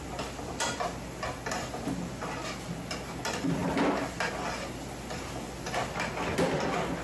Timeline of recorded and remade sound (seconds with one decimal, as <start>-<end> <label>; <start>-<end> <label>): 0.0-7.0 recorded